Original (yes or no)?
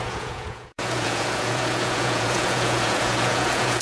no